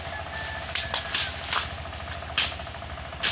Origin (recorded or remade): recorded